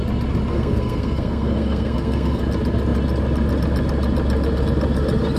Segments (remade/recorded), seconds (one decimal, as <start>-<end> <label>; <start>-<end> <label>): 0.0-0.5 recorded; 0.5-2.4 remade; 2.4-5.4 recorded